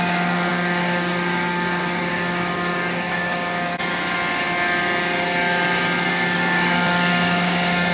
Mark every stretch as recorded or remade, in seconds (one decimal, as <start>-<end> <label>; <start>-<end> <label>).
0.0-3.7 remade; 3.7-6.1 recorded; 6.1-7.9 remade